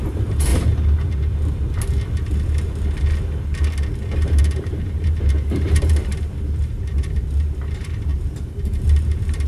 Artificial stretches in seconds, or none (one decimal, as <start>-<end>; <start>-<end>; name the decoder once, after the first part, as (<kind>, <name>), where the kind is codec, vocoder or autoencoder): 0.0-0.5 (vocoder, BigVGAN v2); 4.4-6.1; 6.9-9.5